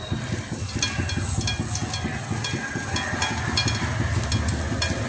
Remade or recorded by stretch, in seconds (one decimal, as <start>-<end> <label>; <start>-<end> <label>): 0.0-5.1 recorded